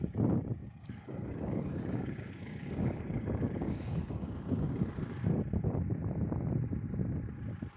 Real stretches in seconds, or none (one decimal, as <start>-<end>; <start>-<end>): 0.0-0.6; 5.3-7.8